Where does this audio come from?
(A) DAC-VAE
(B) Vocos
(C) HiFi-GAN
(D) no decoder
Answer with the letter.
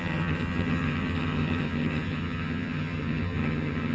C